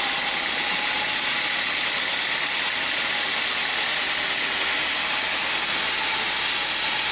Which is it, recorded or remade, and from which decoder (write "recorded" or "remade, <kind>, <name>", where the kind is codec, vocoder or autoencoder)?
recorded